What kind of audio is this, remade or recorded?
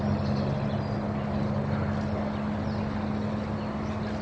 recorded